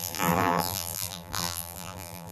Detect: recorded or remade remade